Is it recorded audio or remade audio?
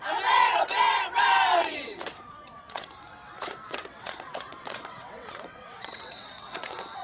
remade